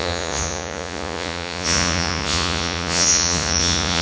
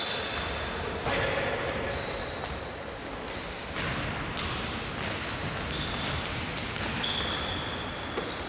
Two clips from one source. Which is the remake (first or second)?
first